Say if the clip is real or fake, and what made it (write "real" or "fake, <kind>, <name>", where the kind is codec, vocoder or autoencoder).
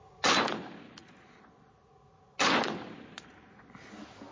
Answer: real